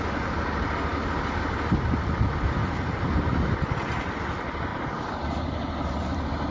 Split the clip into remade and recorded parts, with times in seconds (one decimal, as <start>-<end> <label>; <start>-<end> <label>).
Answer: 0.0-6.5 recorded